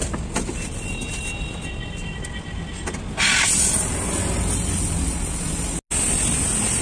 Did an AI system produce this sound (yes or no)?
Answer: no